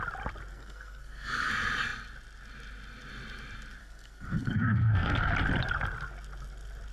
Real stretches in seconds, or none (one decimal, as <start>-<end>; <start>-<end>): 0.0-0.5; 1.5-3.8; 5.3-6.9